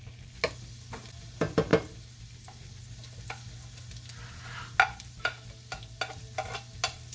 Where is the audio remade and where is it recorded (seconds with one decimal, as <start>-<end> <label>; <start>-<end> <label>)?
0.0-7.1 recorded